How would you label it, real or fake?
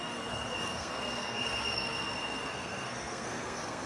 fake